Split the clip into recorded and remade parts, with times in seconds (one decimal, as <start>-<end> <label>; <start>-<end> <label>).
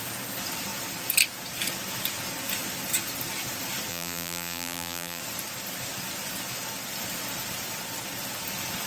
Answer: 0.0-3.9 recorded; 3.9-5.2 remade; 5.2-8.9 recorded